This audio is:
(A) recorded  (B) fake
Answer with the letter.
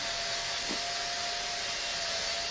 A